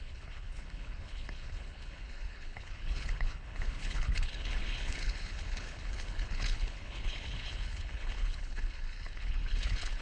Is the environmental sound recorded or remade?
remade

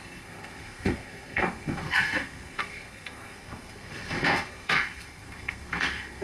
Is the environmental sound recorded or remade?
remade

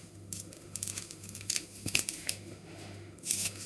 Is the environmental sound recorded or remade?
remade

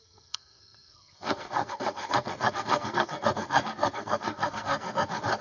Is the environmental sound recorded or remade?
remade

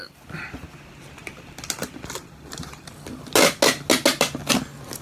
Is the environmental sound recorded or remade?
recorded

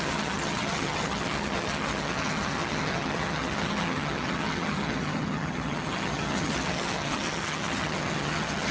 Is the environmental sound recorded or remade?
remade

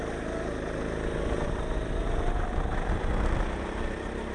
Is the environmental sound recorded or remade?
recorded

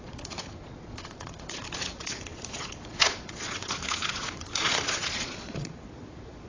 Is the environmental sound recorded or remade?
remade